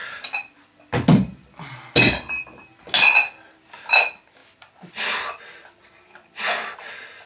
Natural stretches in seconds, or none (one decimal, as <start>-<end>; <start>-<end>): 0.0-7.3

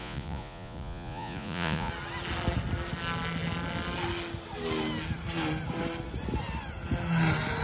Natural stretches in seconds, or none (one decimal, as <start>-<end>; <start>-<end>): 1.9-7.6

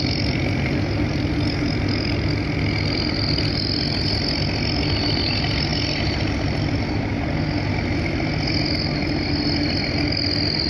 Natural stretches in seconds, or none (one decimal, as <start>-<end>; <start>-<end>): 0.0-10.7